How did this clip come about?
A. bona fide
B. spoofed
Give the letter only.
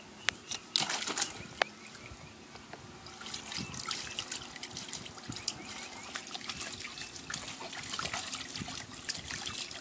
A